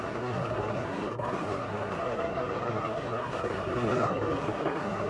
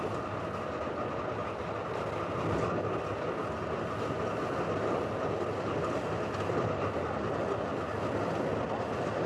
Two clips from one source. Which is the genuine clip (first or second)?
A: second